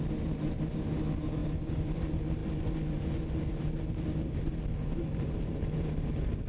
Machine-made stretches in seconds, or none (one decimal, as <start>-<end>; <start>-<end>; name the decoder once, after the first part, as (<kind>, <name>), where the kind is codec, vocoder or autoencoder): 0.0-6.5 (vocoder, BigVGAN v2)